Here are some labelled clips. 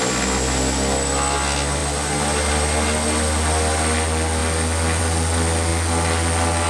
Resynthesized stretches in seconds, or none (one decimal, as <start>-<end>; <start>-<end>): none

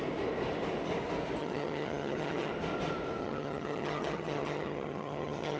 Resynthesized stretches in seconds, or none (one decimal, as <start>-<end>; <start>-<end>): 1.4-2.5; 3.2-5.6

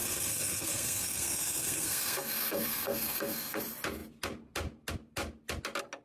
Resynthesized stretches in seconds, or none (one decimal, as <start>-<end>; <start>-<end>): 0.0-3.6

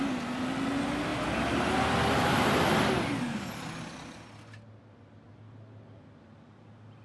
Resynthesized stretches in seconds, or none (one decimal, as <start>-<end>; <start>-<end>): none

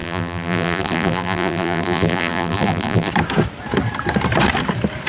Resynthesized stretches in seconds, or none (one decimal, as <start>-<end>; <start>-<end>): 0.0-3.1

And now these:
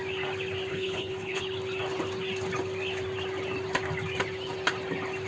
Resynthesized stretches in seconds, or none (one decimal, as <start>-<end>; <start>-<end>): 0.7-1.4

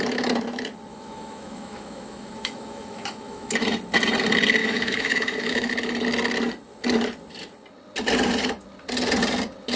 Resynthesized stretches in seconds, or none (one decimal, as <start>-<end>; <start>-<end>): 0.9-3.5; 4.6-5.7